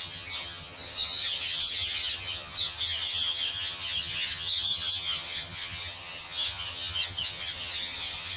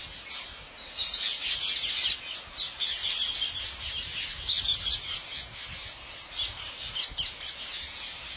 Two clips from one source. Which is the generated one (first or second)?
first